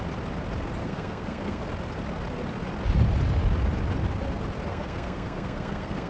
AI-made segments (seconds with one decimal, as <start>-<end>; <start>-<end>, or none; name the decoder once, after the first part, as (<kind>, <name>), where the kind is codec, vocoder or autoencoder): 0.8-1.6 (codec, SNAC); 4.7-6.1